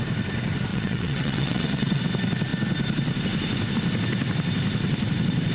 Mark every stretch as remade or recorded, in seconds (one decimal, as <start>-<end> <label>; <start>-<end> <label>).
0.0-0.7 recorded; 0.7-2.0 remade; 2.0-5.5 recorded